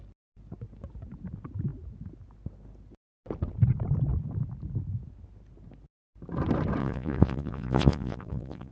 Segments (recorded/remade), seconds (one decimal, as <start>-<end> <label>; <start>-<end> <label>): 0.0-6.8 recorded; 6.8-8.7 remade